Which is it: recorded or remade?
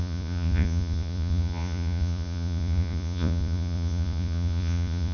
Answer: remade